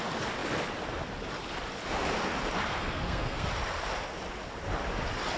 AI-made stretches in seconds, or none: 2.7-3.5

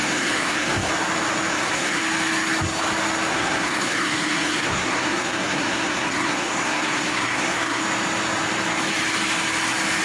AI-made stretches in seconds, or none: 0.0-0.9; 1.5-2.0; 3.3-7.8